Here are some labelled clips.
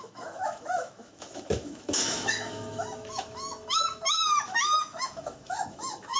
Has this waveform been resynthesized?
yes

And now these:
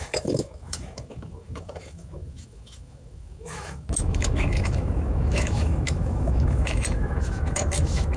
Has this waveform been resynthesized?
yes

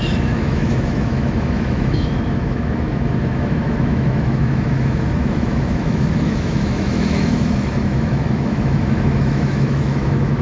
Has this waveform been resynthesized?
yes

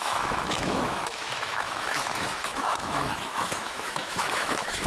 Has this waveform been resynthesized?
yes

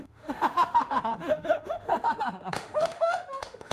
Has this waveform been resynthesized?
yes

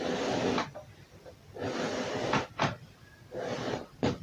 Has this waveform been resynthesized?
no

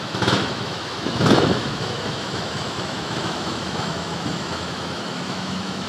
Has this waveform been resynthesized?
yes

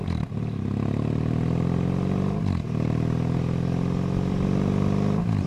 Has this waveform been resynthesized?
no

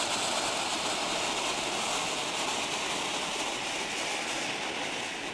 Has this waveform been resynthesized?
no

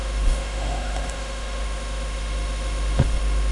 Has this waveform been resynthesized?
yes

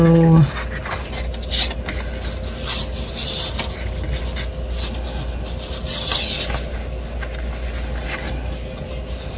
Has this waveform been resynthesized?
no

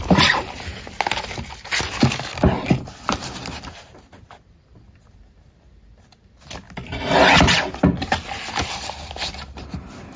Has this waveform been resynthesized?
no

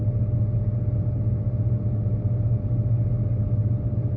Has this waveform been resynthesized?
no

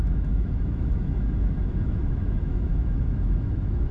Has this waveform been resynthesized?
yes